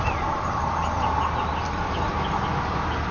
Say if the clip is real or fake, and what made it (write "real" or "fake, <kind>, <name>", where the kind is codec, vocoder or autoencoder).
real